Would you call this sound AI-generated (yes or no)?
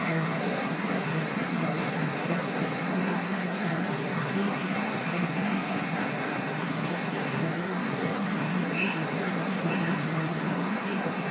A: yes